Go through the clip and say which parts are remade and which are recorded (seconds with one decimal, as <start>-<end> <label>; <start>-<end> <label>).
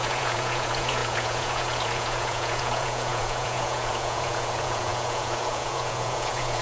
0.0-6.6 remade